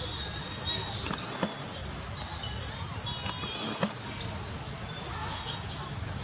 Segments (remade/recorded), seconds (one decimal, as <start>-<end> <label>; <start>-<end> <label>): 0.0-5.2 recorded; 5.2-5.7 remade; 5.7-6.2 recorded